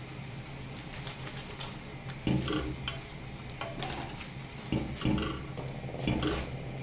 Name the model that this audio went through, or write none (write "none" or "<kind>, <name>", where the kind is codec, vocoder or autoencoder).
none